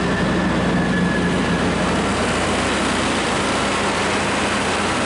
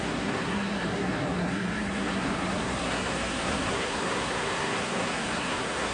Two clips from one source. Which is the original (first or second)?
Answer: first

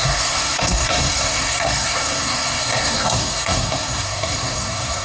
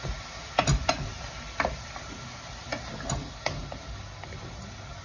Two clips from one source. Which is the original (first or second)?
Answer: second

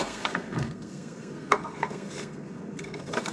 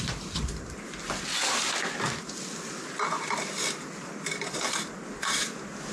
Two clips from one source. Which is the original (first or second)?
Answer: second